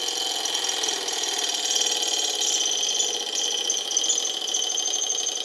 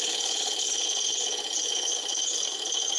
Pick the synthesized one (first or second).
second